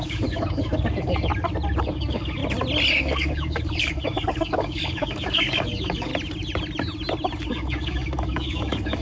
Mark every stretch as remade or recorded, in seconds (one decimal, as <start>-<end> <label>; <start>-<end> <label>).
0.0-1.3 remade; 1.3-1.8 recorded; 1.8-2.4 remade; 2.4-2.9 recorded; 2.9-6.1 remade; 6.1-7.5 recorded; 7.5-9.0 remade